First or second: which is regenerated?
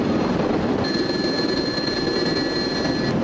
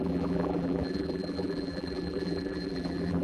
second